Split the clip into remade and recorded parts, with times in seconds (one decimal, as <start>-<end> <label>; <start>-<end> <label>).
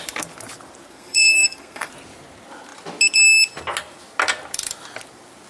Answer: 0.0-0.9 recorded; 0.9-1.9 remade; 1.9-5.5 recorded